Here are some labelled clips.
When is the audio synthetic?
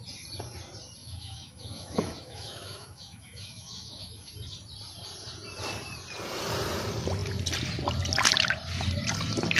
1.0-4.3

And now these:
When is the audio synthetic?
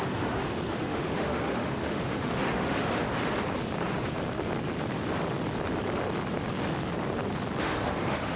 0.0-3.1; 7.6-8.4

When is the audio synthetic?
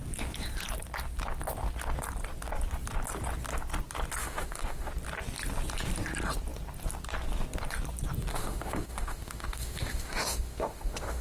4.2-4.9; 8.3-11.2